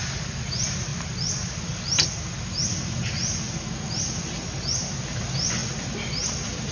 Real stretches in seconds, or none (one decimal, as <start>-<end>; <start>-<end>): 0.0-6.7